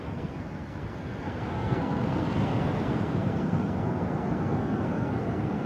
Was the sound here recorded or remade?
remade